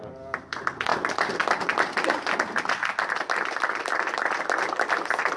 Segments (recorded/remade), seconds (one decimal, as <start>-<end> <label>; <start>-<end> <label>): 0.0-5.4 recorded